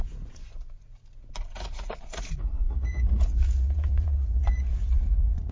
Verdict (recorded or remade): remade